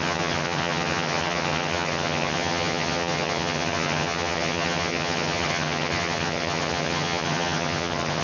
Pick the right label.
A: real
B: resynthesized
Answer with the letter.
B